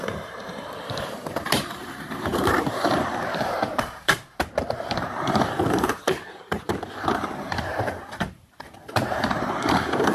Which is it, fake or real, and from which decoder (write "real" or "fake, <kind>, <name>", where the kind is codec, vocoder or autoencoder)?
fake, vocoder, BigVGAN v2